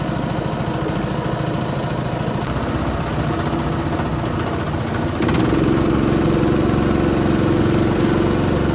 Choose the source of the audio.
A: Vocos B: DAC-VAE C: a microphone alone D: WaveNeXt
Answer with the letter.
C